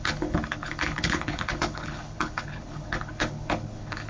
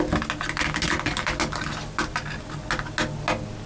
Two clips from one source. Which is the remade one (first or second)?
first